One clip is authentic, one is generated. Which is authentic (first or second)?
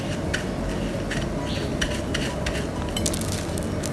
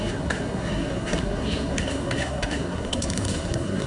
first